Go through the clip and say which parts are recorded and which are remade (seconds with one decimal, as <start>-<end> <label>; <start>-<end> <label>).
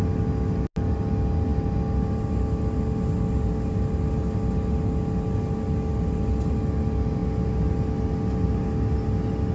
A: 0.0-9.5 recorded